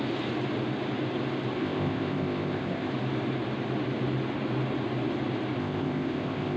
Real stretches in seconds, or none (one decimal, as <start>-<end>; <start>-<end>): 0.0-1.6; 2.9-5.6